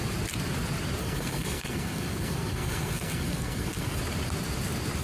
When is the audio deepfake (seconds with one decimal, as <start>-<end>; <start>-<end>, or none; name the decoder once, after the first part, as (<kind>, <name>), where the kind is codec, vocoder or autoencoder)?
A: 1.0-4.0 (codec, SNAC)